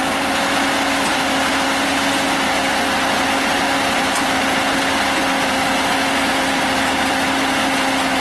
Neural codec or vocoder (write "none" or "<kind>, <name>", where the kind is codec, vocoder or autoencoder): none